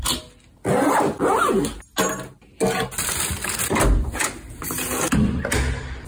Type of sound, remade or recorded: recorded